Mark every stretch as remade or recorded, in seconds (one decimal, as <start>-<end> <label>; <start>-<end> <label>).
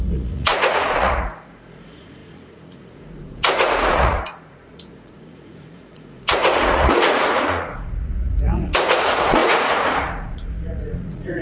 0.0-11.4 remade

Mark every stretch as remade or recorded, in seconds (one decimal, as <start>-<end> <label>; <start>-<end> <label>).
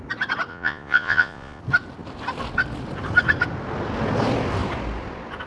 0.0-0.5 recorded; 0.5-1.6 remade; 1.6-5.5 recorded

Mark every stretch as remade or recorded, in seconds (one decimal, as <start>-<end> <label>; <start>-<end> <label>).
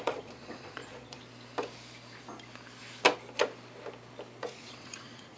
0.0-1.2 remade; 1.2-4.4 recorded; 4.4-5.4 remade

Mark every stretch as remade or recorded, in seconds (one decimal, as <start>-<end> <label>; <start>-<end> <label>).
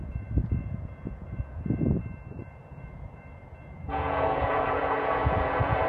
0.0-1.8 remade; 1.8-2.4 recorded; 2.4-5.9 remade